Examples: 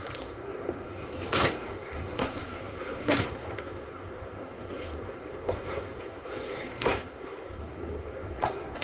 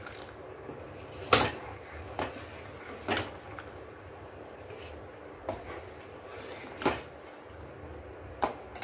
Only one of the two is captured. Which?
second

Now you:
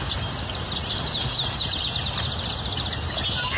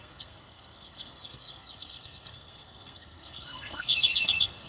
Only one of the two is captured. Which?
first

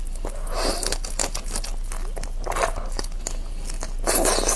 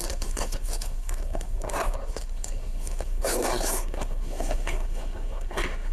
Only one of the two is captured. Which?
first